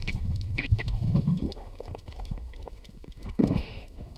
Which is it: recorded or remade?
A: remade